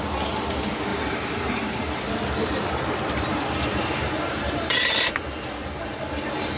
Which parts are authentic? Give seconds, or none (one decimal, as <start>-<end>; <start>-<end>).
0.0-0.9; 4.9-5.6